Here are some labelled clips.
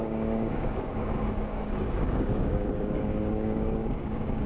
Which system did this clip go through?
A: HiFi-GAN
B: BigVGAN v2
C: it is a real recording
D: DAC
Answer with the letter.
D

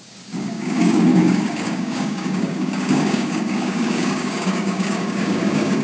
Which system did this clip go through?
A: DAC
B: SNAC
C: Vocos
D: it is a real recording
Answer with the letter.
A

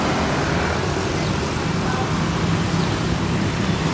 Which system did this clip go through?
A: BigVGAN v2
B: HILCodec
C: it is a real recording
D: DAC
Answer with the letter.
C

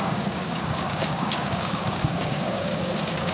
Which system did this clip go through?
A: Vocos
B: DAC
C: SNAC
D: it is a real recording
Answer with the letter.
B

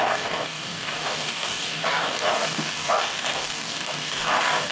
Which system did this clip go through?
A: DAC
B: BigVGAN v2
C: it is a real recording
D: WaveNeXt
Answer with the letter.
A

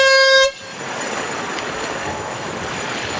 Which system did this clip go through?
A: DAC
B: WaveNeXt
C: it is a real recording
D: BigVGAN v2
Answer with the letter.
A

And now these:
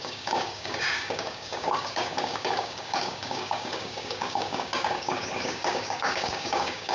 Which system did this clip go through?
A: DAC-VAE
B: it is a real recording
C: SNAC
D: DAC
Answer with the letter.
D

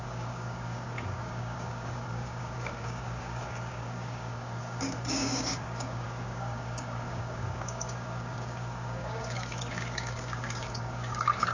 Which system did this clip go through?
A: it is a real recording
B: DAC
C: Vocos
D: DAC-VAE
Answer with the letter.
B